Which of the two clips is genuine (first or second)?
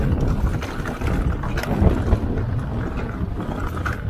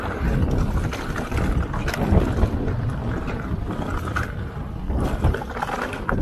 first